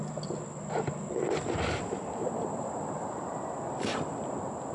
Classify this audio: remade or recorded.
recorded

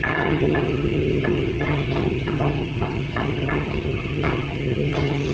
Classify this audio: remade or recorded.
remade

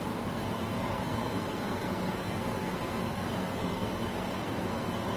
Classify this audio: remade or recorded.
remade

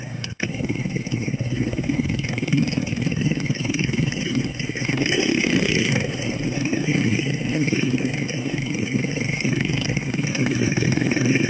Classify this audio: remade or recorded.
remade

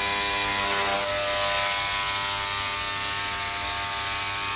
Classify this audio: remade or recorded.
recorded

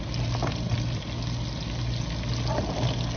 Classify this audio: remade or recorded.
recorded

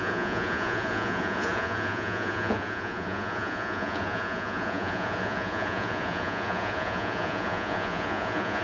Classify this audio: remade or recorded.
remade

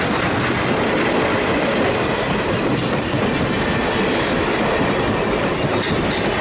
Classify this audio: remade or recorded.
recorded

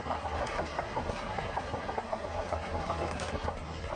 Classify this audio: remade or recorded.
remade